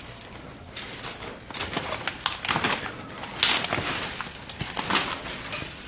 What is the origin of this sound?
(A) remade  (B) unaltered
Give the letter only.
B